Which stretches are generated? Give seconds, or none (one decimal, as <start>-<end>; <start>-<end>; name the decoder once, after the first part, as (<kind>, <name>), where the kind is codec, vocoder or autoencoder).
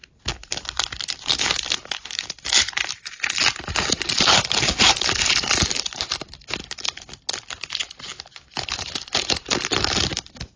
none